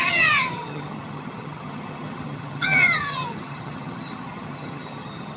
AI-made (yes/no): yes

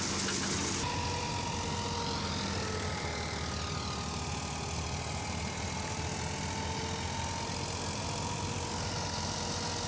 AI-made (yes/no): no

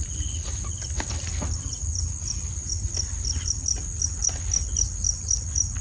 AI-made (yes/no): no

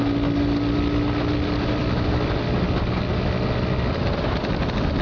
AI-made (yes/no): no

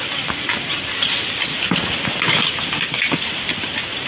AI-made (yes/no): no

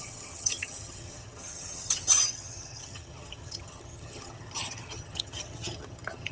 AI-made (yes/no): yes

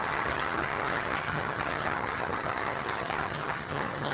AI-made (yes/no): yes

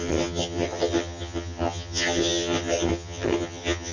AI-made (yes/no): yes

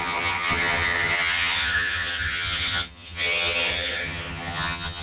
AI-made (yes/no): yes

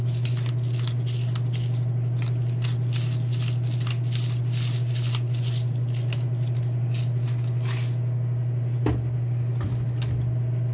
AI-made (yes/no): no